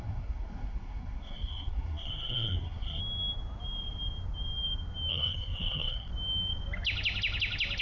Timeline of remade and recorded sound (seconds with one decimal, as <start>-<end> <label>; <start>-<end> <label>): 0.0-3.0 remade; 3.0-5.1 recorded; 5.1-6.1 remade; 6.1-7.8 recorded